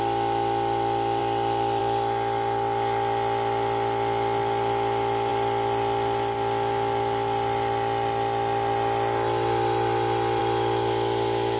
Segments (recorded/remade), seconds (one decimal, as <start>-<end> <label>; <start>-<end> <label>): 0.0-11.6 recorded